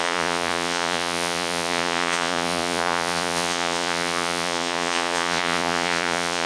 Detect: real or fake fake